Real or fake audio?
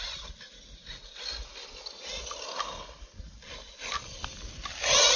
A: real